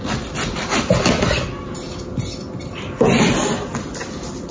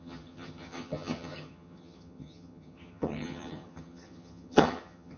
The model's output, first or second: second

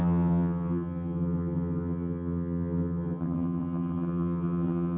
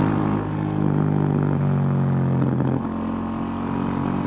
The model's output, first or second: first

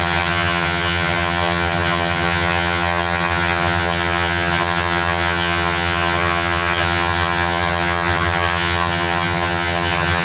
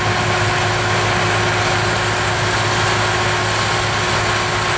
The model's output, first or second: first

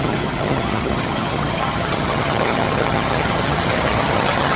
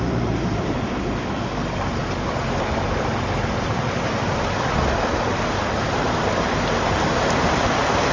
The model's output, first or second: first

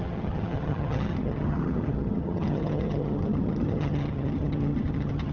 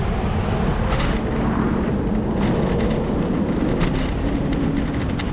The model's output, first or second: first